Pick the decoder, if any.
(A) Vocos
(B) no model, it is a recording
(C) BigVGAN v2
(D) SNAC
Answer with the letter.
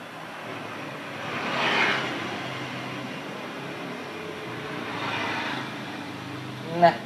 B